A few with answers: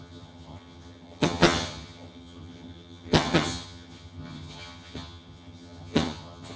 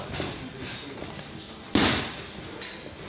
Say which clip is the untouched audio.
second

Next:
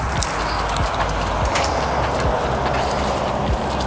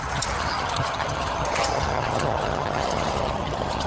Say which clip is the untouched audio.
first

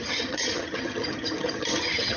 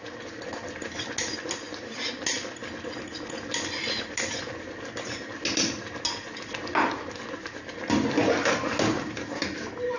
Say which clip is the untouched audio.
second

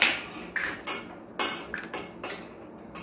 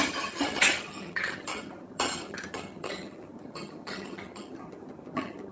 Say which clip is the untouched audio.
first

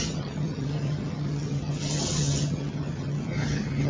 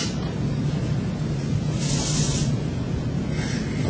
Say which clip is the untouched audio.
second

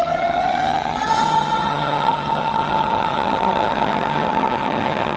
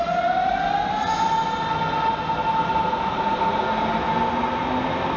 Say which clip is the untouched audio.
second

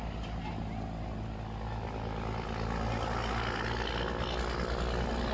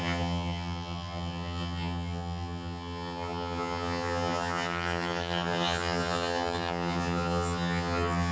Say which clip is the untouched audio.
first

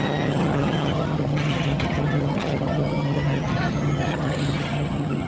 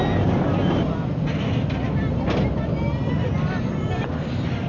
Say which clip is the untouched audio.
second